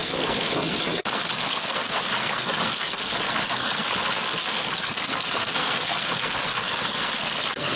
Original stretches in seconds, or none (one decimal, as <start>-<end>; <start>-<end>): none